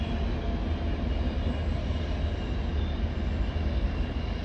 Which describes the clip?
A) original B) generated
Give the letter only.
A